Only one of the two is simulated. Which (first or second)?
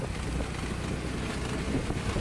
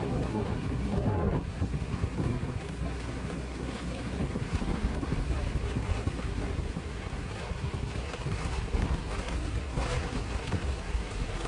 second